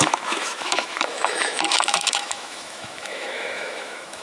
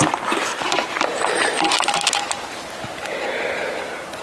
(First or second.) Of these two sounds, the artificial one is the first